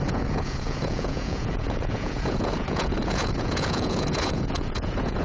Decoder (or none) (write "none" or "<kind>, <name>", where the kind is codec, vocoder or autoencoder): vocoder, Vocos